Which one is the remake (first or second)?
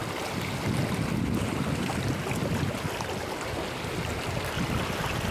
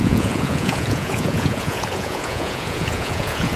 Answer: second